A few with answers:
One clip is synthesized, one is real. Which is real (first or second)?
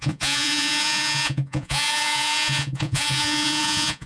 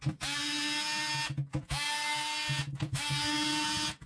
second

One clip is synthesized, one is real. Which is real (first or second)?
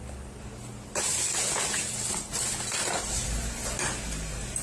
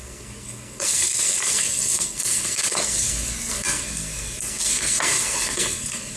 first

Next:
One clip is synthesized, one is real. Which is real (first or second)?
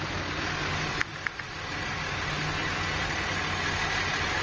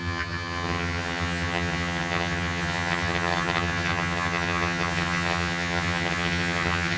first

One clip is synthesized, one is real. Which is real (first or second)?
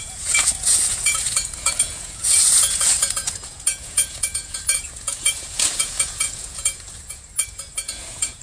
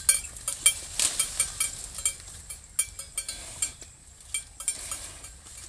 second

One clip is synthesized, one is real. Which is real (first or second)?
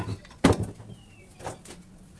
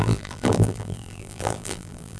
first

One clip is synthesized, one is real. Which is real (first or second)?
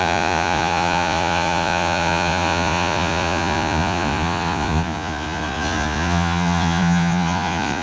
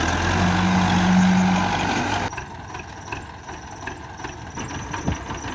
second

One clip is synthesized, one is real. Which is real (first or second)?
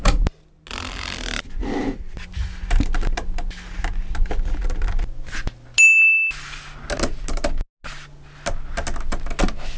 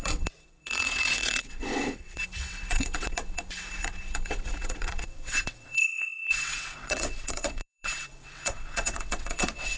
first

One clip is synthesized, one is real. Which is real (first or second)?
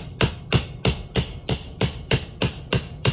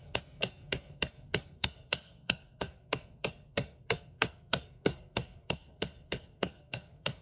first